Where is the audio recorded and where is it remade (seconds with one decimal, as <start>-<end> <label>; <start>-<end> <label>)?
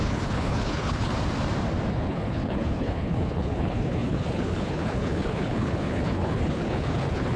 0.0-1.1 remade; 1.1-1.9 recorded; 1.9-7.4 remade